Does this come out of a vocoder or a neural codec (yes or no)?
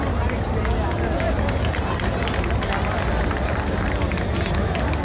no